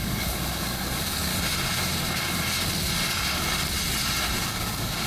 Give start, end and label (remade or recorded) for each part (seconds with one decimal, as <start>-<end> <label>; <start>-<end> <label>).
0.0-1.3 remade; 1.3-4.4 recorded; 4.4-5.1 remade